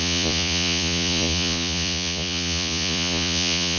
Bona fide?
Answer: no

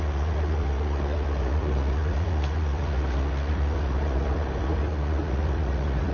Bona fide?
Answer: no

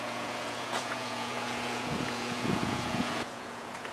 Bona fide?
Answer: no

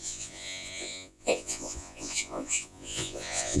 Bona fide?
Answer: no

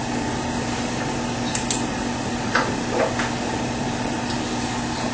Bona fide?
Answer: yes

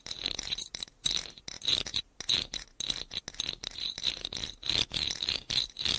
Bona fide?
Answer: yes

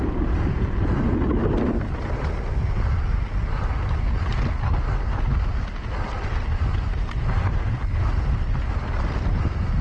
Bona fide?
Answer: yes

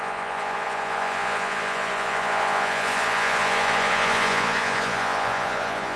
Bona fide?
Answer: no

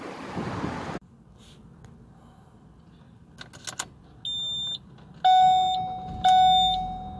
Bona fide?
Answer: yes